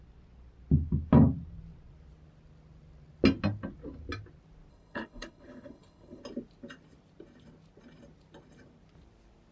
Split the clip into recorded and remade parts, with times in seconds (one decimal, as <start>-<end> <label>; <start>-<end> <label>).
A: 0.0-4.7 recorded; 4.7-6.2 remade; 6.2-9.5 recorded